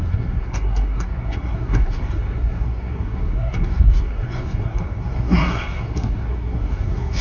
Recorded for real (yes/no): no